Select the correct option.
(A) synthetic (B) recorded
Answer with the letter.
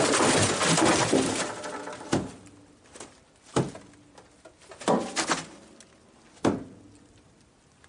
B